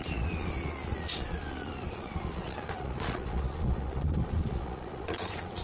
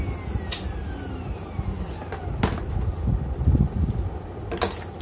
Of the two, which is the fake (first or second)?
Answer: first